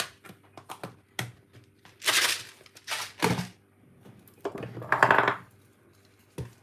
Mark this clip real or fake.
real